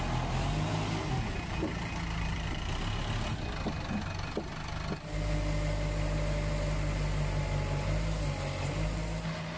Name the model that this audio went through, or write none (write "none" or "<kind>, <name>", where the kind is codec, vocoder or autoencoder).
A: none